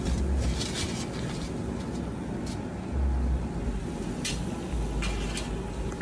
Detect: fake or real real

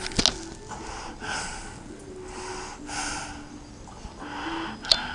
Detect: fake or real real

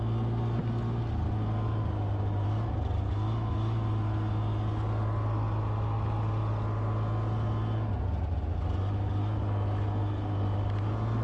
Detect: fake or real real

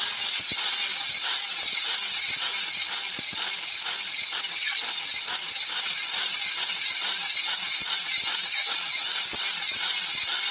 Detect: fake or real real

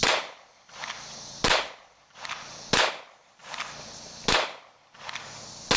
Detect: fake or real real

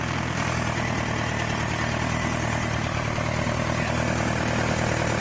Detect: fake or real fake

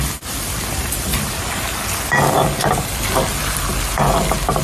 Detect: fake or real real